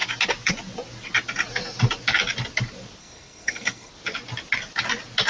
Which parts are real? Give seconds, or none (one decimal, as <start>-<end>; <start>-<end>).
0.0-3.0; 3.9-5.3